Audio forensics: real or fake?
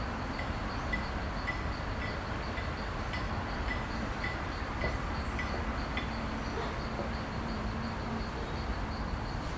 real